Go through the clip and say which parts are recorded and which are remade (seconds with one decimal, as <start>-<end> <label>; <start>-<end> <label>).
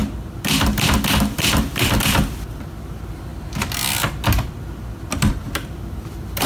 0.0-1.1 recorded; 1.1-3.3 remade; 3.3-5.3 recorded; 5.3-6.5 remade